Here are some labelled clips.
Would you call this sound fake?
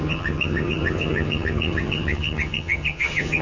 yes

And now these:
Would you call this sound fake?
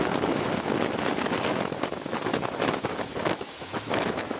yes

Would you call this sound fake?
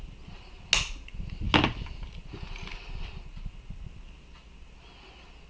no